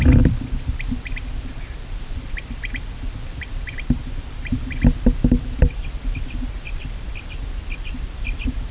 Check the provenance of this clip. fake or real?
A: fake